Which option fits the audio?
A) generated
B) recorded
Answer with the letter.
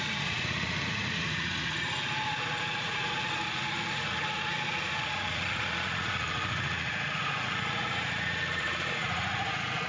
A